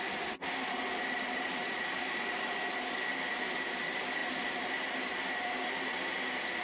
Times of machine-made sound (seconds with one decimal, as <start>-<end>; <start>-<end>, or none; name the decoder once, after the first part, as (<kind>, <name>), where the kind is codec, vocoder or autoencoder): none